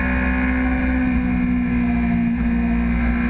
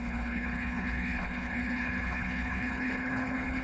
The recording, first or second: first